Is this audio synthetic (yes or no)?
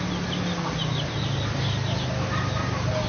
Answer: no